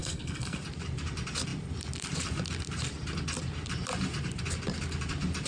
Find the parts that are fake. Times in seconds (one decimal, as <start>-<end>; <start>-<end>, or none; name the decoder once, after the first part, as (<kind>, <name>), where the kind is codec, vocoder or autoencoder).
0.0-0.6 (codec, SNAC)